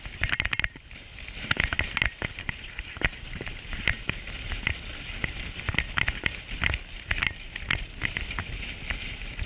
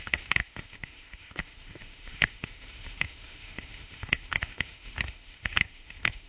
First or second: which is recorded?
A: first